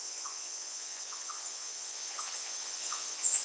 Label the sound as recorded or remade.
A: remade